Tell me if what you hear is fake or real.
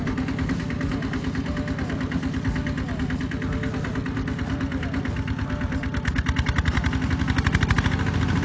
real